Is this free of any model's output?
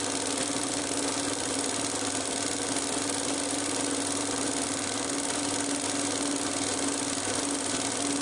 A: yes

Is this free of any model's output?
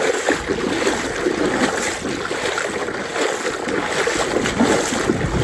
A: yes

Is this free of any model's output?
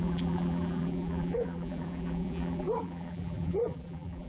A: no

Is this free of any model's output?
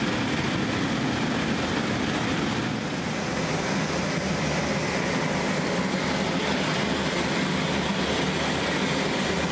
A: yes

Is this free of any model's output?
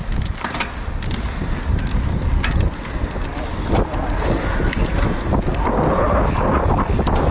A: yes